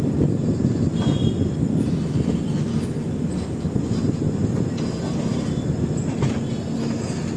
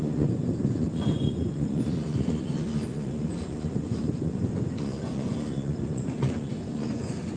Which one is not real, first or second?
second